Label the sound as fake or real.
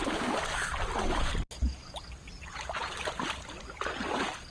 real